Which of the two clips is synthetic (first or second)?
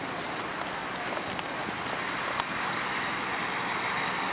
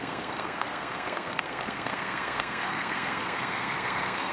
second